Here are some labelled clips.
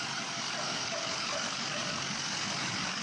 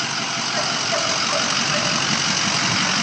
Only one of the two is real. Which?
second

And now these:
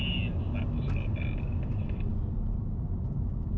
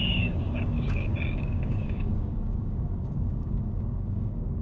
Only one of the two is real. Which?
first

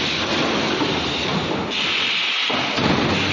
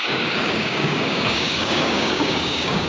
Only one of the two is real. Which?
first